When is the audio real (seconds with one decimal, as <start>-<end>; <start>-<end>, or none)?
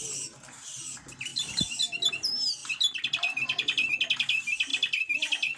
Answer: 0.0-1.3; 2.1-2.6; 3.9-4.7